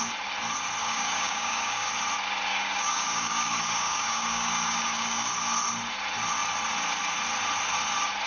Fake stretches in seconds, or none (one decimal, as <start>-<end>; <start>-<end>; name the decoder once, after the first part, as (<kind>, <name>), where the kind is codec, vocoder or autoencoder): 0.8-1.9 (codec, DAC); 2.5-5.3